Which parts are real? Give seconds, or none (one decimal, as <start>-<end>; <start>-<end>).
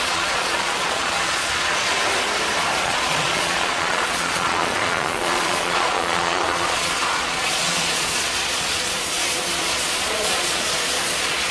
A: 2.0-2.8